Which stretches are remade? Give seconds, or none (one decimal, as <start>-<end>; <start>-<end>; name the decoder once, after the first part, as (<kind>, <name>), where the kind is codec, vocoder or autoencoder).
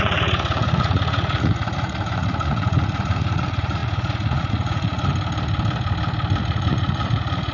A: 0.0-5.1 (vocoder, Vocos); 6.4-7.5